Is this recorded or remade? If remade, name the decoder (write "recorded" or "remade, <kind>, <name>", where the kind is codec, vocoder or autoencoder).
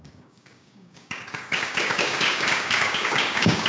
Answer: remade, codec, DAC